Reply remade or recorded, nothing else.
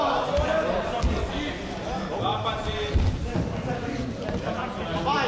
recorded